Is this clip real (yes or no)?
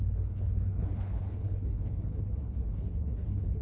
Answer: no